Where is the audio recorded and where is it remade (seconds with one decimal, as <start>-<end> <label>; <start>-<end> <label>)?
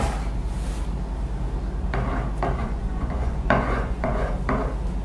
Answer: 0.0-2.6 recorded; 2.6-4.3 remade; 4.3-5.0 recorded